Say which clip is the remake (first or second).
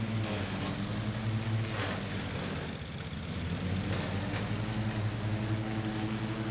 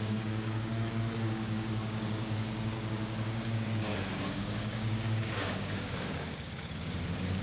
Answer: second